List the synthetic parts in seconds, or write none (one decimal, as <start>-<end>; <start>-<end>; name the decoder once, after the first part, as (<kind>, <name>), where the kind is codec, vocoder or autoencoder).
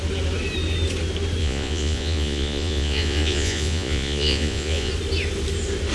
1.4-4.9 (vocoder, Vocos)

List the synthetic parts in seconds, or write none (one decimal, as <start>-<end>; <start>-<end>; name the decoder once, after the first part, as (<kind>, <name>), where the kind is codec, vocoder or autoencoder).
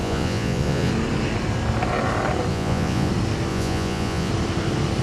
0.0-0.9 (vocoder, Vocos); 2.5-3.1; 3.5-4.3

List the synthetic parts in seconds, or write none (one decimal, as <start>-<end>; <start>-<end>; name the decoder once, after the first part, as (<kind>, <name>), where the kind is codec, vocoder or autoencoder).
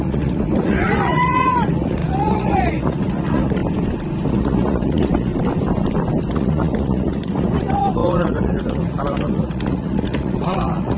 0.0-3.6 (vocoder, Vocos); 4.3-5.3; 6.3-11.0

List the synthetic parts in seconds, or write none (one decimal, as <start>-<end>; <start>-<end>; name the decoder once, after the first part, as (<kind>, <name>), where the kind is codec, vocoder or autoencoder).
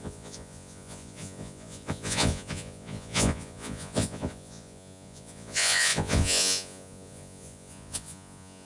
0.0-8.7 (vocoder, Vocos)